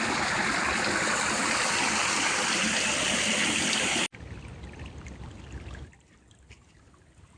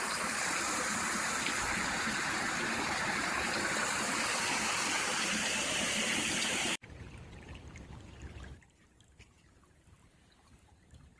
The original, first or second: first